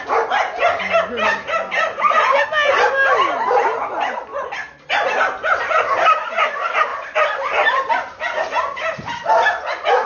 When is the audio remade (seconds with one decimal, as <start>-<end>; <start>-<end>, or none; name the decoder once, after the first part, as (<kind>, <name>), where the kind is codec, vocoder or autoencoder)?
6.9-7.9 (vocoder, BigVGAN v2)